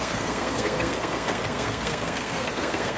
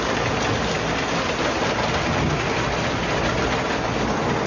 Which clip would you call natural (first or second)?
second